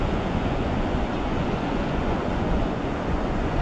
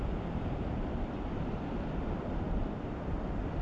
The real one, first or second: second